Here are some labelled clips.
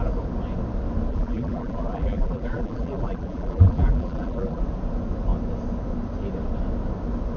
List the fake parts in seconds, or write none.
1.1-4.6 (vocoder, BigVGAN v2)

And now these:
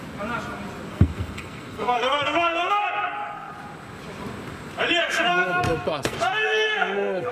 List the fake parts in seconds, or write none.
0.9-3.5 (codec, SNAC); 5.0-7.3

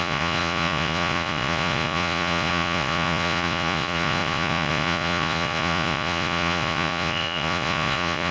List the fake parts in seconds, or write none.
0.0-8.3 (vocoder, Vocos)

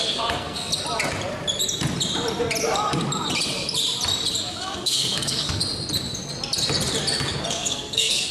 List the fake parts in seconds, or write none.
0.0-0.7 (codec, SNAC); 4.5-5.6; 7.5-8.3

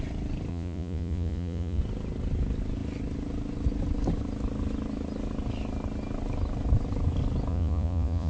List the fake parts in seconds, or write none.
0.5-1.8 (vocoder, Vocos); 7.5-8.3